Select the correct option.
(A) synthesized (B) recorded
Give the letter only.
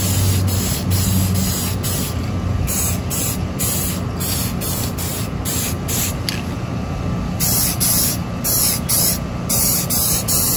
B